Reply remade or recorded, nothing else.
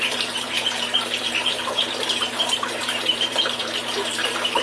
remade